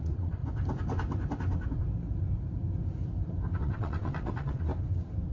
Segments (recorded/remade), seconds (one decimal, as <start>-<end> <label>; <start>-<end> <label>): 0.0-0.4 remade; 0.4-3.6 recorded; 3.6-4.7 remade; 4.7-5.3 recorded

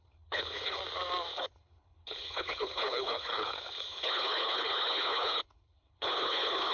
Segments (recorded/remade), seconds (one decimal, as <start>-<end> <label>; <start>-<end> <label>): 0.0-0.8 remade; 0.8-1.3 recorded; 1.3-6.7 remade

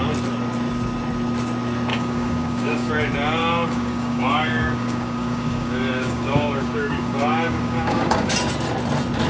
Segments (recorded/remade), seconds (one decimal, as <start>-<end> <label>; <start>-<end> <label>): 0.0-1.9 recorded; 1.9-2.9 remade; 2.9-3.4 recorded; 3.4-8.3 remade; 8.3-9.3 recorded

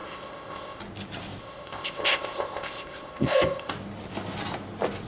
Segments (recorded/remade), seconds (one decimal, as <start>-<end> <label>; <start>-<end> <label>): 0.0-0.8 remade; 0.8-1.4 recorded; 1.4-3.7 remade; 3.7-5.1 recorded

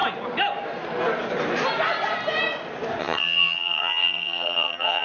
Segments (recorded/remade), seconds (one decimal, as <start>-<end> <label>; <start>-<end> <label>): 0.0-3.0 recorded; 3.0-5.0 remade

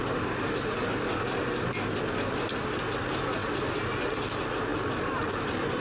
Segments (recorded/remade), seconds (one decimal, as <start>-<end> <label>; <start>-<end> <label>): 0.0-4.7 recorded; 4.7-5.3 remade; 5.3-5.8 recorded

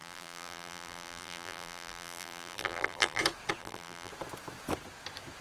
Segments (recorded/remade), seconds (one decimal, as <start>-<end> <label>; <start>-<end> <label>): 0.0-3.2 remade; 3.2-3.6 recorded; 3.6-4.1 remade; 4.1-5.4 recorded